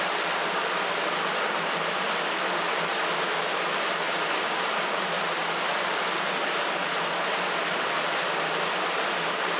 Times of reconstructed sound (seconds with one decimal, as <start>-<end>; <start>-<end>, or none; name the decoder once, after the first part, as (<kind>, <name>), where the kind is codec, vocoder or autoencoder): none